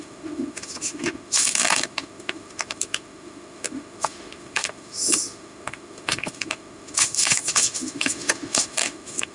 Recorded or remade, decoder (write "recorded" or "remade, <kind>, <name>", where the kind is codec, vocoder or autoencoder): remade, autoencoder, DAC-VAE